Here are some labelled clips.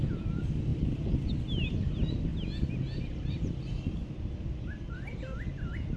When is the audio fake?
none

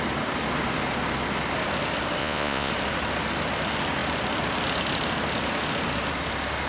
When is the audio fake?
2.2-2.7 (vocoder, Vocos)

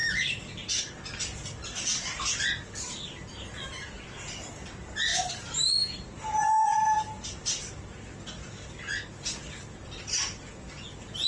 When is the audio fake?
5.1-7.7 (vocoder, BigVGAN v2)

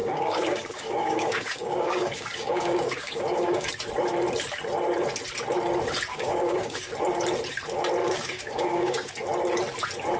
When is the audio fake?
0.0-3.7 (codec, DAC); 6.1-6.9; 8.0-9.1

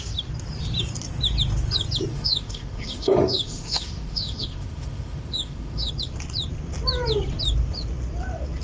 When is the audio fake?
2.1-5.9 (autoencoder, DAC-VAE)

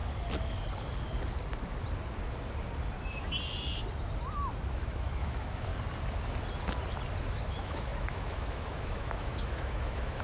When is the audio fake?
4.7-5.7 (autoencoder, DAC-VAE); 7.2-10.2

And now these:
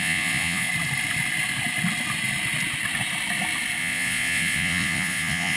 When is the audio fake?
0.0-0.7 (vocoder, Vocos); 3.8-5.6

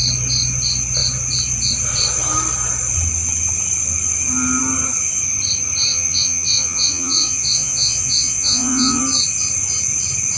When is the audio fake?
5.9-9.0 (vocoder, Vocos)